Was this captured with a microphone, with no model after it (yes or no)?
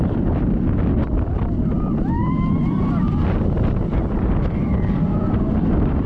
no